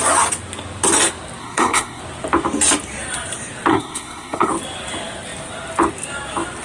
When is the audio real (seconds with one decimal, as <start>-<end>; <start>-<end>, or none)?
0.0-1.4; 2.0-3.7; 4.5-6.6